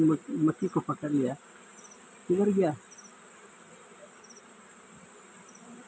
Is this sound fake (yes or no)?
no